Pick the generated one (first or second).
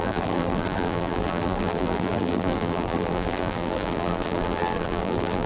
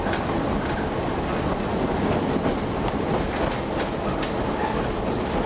first